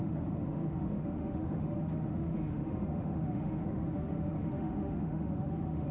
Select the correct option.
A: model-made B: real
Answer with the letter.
A